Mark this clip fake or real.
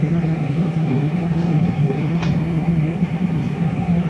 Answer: fake